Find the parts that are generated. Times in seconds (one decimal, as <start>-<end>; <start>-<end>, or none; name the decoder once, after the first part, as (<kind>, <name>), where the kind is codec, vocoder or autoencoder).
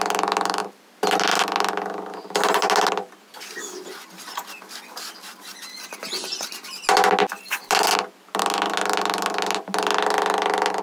none